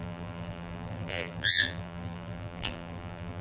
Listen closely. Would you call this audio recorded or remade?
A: remade